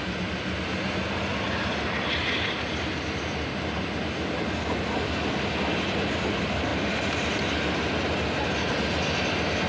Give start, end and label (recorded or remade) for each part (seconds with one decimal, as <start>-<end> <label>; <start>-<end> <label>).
0.0-6.7 recorded; 6.7-8.7 remade; 8.7-9.7 recorded